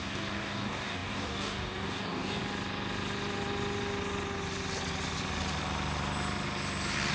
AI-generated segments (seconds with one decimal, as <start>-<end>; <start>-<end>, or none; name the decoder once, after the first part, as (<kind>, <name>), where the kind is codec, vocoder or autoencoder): 0.0-2.4 (codec, DAC)